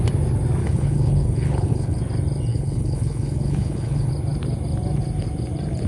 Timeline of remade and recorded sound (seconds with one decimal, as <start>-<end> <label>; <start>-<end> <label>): 0.0-0.6 recorded; 0.6-2.0 remade; 2.0-2.5 recorded; 2.5-4.1 remade; 4.1-5.9 recorded